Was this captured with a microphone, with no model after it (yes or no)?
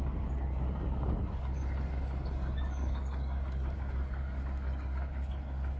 no